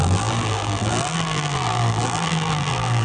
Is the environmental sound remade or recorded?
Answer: remade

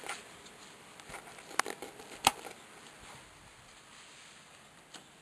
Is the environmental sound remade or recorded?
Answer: recorded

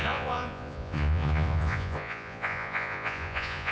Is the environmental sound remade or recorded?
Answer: remade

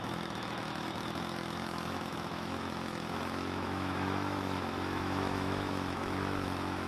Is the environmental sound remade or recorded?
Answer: remade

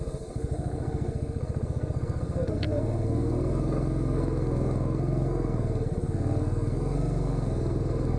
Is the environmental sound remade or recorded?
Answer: remade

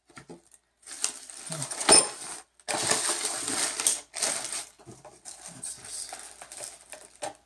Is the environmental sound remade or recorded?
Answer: recorded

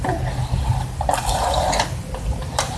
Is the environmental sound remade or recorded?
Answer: recorded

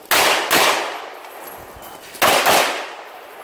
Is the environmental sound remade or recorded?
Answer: recorded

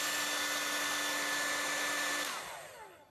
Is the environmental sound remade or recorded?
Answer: recorded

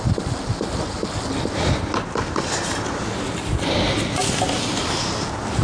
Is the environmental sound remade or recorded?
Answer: recorded